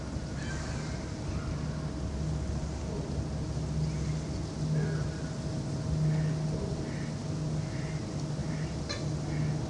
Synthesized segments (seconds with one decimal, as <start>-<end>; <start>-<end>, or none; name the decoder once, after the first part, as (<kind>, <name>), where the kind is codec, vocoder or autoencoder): none